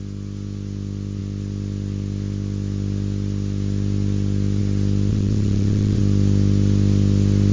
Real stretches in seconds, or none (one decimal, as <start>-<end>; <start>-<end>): 0.0-5.1; 6.0-7.5